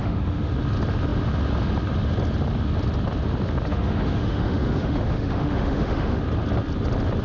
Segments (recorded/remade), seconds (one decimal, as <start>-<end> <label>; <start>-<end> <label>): 0.0-0.5 remade; 0.5-3.7 recorded; 3.7-6.2 remade; 6.2-7.2 recorded